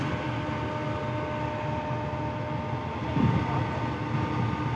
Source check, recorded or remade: recorded